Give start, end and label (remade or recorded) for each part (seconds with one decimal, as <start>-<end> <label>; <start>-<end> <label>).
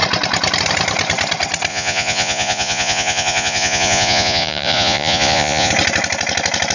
0.0-1.7 recorded; 1.7-5.7 remade; 5.7-6.7 recorded